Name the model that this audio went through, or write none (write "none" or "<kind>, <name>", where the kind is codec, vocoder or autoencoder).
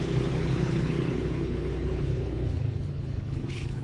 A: codec, HILCodec